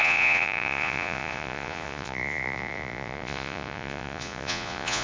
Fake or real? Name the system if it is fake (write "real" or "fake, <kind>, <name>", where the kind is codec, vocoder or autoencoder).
fake, vocoder, Vocos